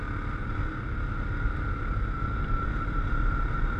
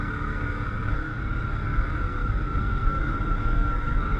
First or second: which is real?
first